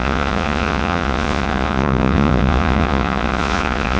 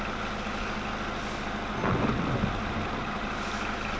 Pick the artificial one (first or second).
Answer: first